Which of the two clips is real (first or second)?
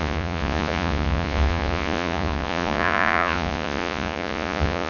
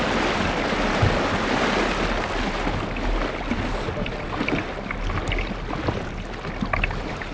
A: second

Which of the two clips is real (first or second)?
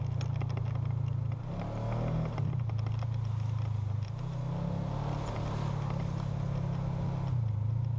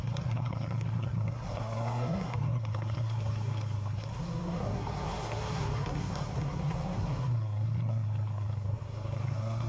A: first